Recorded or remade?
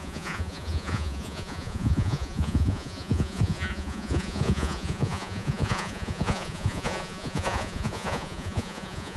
remade